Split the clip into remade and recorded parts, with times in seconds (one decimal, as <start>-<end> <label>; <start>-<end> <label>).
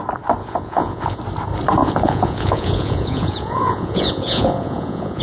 0.0-0.4 recorded; 0.4-1.2 remade; 1.2-1.8 recorded; 1.8-5.2 remade